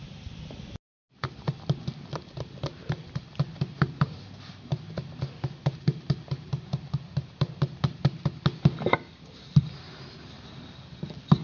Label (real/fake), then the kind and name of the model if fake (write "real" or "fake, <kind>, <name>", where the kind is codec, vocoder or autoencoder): real